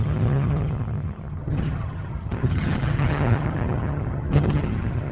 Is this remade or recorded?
remade